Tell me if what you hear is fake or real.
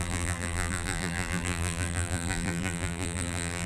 fake